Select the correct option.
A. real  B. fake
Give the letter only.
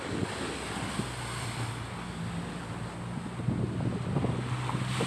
A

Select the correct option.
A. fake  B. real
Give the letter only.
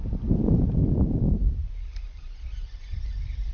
B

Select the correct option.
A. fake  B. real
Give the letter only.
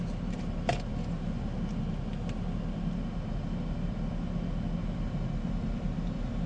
B